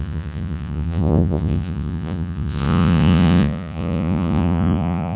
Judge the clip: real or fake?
fake